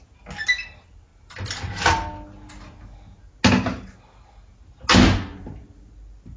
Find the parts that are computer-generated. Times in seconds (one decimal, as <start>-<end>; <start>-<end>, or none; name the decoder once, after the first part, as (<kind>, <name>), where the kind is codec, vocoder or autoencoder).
none